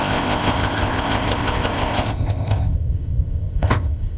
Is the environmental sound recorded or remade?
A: remade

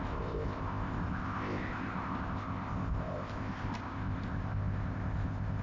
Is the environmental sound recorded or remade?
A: remade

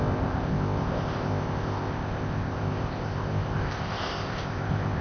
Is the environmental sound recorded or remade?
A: remade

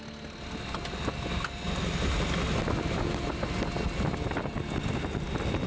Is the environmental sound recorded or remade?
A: recorded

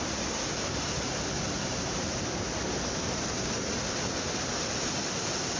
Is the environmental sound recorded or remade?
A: recorded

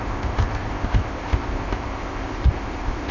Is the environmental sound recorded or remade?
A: remade